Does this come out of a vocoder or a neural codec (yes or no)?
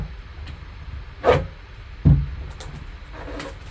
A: no